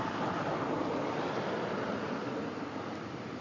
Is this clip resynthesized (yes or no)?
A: no